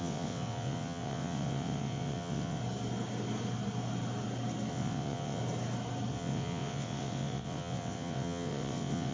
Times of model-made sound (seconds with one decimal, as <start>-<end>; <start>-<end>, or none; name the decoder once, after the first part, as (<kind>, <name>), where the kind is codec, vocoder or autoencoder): 0.0-2.6 (vocoder, WaveNeXt); 4.7-5.4; 6.1-9.1